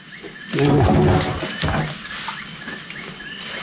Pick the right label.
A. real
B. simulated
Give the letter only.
A